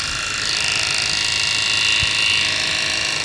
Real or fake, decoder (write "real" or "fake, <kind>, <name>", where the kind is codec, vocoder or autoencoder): real